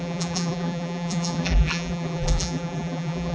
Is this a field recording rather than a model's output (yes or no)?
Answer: no